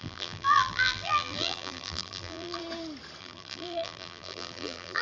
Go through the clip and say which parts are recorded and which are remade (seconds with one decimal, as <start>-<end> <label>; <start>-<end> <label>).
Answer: 0.0-2.6 remade; 2.6-3.2 recorded; 3.2-5.0 remade